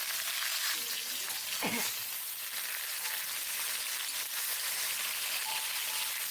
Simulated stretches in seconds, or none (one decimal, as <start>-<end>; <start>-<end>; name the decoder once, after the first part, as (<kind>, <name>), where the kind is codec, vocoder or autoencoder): 4.5-5.1 (vocoder, BigVGAN v2)